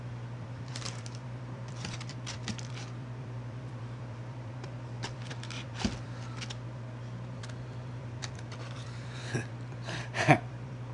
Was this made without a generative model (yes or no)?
no